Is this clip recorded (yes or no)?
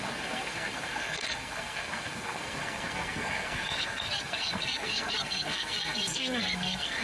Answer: no